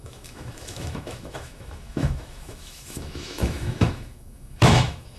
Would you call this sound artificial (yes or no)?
yes